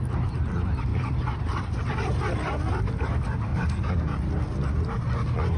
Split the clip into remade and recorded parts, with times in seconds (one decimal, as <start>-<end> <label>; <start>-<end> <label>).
0.0-0.9 recorded; 0.9-2.1 remade; 2.1-3.5 recorded; 3.5-4.0 remade; 4.0-5.6 recorded